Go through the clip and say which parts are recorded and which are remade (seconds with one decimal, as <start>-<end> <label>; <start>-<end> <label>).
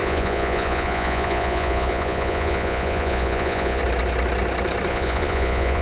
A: 0.0-3.8 remade; 3.8-4.9 recorded; 4.9-5.8 remade